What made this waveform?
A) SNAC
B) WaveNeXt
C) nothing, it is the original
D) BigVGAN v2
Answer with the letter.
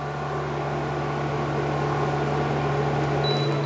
C